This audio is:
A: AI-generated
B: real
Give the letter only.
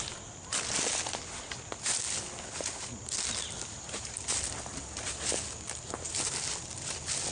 B